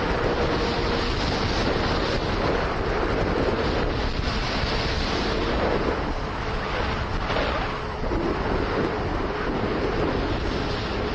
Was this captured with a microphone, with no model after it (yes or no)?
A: yes